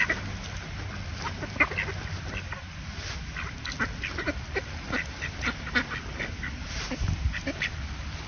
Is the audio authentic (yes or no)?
yes